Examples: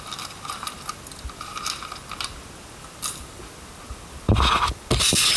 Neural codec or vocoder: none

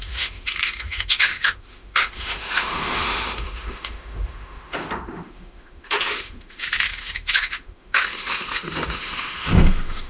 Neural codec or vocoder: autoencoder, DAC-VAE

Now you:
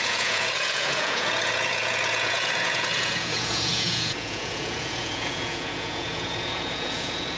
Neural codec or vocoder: vocoder, Vocos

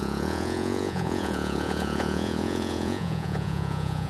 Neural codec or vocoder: vocoder, Vocos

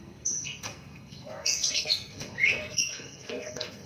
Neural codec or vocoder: codec, SNAC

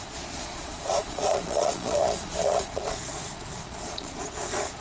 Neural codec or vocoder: vocoder, Vocos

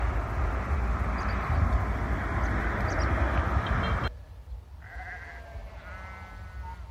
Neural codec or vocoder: none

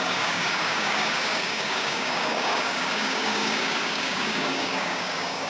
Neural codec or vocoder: codec, DAC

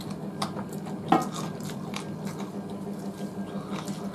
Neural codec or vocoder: none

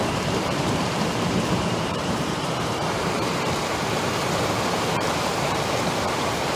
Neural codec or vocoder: vocoder, BigVGAN v2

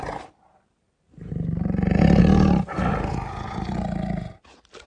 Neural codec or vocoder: none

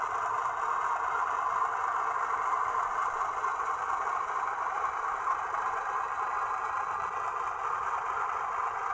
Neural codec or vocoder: none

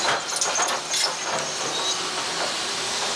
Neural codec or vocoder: none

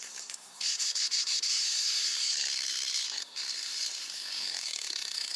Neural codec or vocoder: codec, SNAC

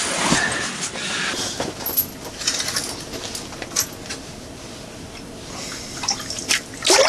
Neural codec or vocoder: none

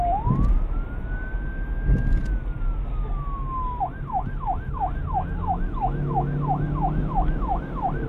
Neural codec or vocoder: none